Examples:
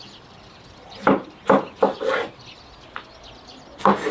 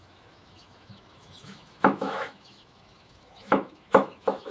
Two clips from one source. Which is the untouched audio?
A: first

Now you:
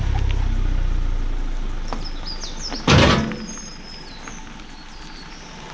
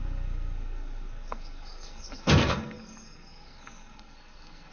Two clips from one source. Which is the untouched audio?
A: first